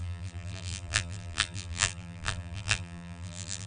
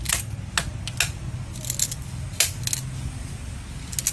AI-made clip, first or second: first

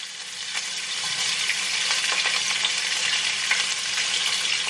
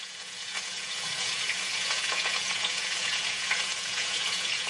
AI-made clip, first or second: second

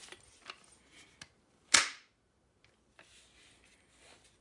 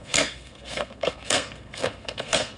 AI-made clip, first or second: second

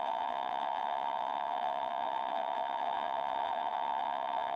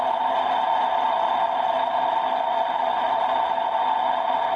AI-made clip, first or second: first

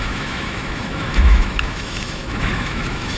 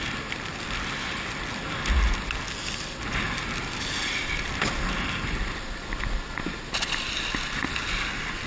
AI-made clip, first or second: first